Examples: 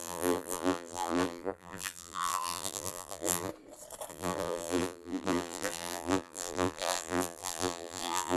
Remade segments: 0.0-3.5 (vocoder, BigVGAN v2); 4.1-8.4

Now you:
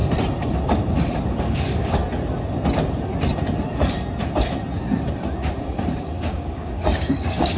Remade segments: 1.4-2.0 (codec, DAC); 6.2-7.6

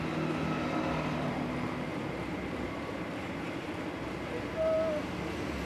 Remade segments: 1.9-3.5 (vocoder, BigVGAN v2)

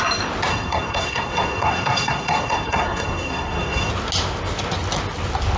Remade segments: 0.5-3.9 (codec, SNAC)